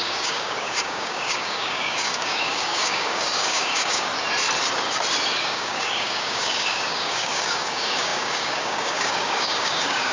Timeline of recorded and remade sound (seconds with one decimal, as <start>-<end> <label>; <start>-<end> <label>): 0.0-4.1 remade; 4.1-5.4 recorded; 5.4-10.1 remade